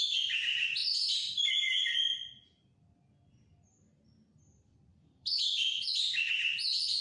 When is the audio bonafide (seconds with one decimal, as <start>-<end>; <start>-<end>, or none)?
0.0-0.8; 1.5-4.9; 6.3-7.0